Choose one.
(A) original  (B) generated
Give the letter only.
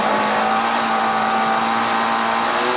A